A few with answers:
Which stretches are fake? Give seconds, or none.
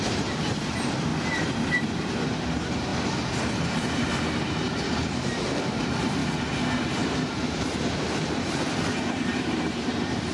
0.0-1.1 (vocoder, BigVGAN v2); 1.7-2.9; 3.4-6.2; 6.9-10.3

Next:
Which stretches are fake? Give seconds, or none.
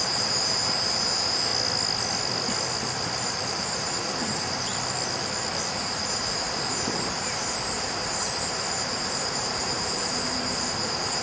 0.0-1.5 (vocoder, BigVGAN v2); 3.5-4.7; 5.7-11.2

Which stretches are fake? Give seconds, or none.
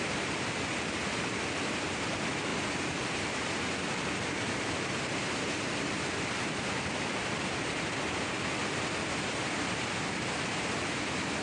none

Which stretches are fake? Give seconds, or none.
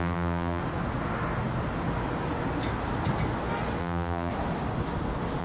0.0-0.6 (vocoder, BigVGAN v2); 3.8-4.3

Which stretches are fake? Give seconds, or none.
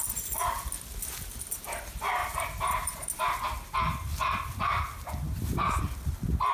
2.2-3.3 (vocoder, BigVGAN v2)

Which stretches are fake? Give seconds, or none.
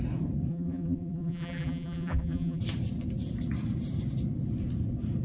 0.5-2.6 (vocoder, BigVGAN v2)